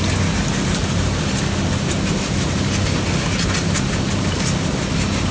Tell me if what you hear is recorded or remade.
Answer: recorded